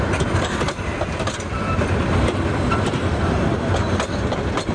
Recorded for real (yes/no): yes